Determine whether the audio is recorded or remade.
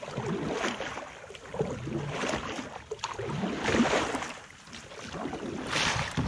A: recorded